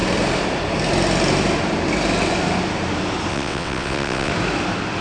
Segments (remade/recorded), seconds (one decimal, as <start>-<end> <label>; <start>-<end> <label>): 0.0-3.3 recorded; 3.3-4.3 remade; 4.3-5.0 recorded